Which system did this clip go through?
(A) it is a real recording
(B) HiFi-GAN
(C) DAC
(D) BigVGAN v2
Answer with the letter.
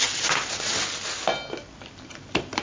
A